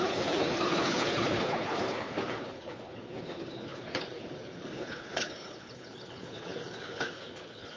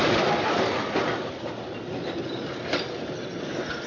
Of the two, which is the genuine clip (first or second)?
second